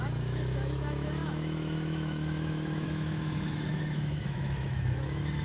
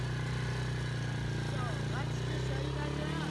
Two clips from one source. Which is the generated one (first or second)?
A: first